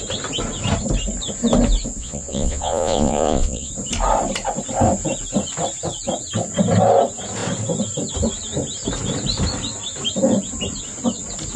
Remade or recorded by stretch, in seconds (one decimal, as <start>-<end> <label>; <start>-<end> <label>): 0.0-2.0 recorded; 2.0-3.7 remade; 3.7-11.6 recorded